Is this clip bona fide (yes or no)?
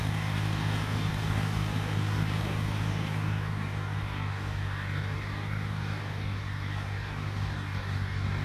no